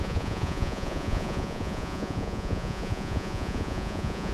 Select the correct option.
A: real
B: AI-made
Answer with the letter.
B